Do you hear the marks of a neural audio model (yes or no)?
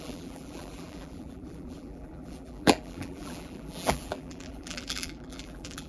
yes